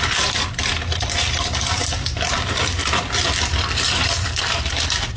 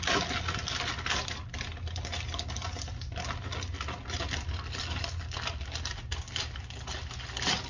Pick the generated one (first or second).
first